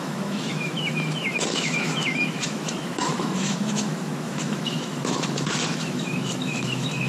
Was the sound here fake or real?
fake